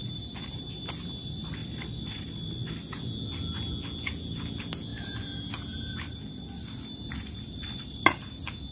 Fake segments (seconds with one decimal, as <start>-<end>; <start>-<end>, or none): none